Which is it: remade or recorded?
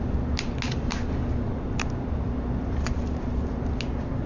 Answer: recorded